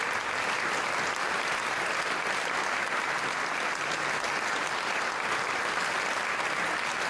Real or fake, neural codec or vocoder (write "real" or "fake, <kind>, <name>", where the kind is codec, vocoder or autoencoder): real